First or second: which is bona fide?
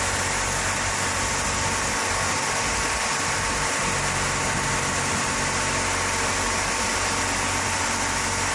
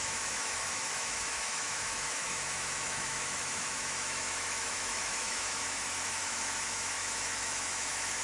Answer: first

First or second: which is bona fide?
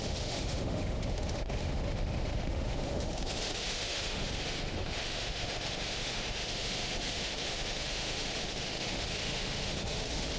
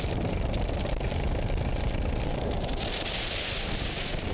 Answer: second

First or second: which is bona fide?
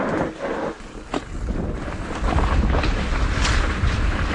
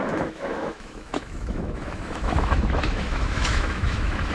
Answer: first